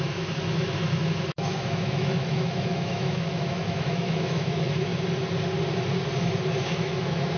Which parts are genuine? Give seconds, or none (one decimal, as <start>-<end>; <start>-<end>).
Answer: 4.9-6.7